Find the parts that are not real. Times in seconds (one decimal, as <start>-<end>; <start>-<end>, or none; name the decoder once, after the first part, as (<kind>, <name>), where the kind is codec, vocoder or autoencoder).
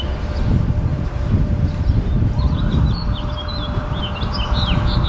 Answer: 0.9-4.0 (vocoder, BigVGAN v2)